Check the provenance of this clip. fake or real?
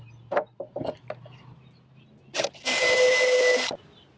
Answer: real